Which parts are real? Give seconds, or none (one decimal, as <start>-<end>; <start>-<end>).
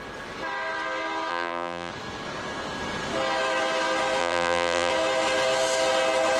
0.0-1.3; 1.9-4.2; 4.9-6.4